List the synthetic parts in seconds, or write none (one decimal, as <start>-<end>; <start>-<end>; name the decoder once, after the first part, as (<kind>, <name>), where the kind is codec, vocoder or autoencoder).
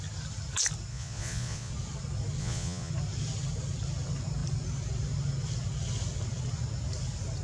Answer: 0.9-1.7 (vocoder, Vocos); 2.4-2.9